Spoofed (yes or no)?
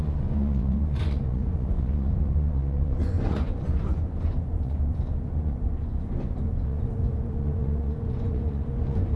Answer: yes